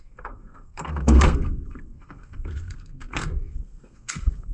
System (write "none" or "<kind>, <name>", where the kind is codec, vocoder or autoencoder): codec, SNAC